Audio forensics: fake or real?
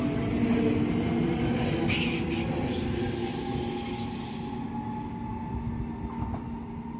real